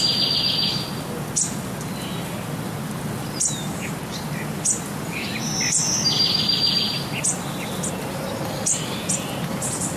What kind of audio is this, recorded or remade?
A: recorded